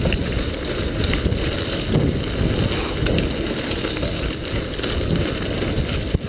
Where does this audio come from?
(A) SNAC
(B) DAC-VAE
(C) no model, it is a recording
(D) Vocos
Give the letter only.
C